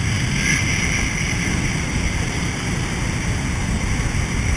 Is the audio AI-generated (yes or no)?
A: no